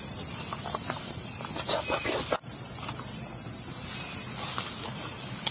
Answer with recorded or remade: recorded